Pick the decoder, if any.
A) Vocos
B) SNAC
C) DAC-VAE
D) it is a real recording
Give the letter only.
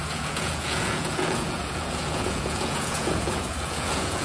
A